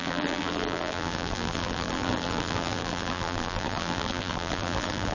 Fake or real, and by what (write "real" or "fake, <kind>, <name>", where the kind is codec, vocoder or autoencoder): fake, vocoder, BigVGAN v2